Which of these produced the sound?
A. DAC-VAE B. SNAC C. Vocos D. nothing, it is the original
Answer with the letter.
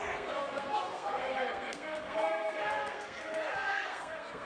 B